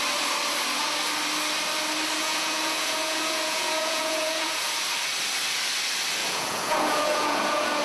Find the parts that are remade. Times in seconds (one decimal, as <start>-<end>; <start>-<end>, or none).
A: 2.2-4.6; 6.2-7.8